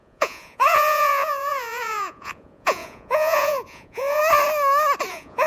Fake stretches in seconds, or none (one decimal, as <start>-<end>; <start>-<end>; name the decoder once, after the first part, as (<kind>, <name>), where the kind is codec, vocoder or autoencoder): 0.0-4.2 (vocoder, Vocos); 5.1-5.5